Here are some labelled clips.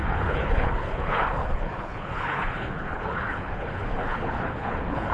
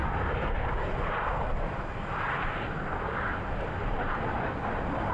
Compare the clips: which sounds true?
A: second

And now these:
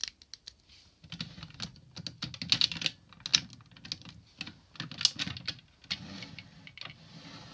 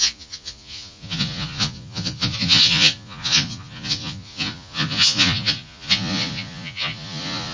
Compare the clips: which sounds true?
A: first